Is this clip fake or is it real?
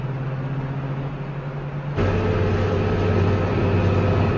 real